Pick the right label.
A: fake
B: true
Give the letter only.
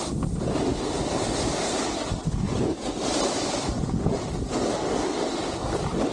B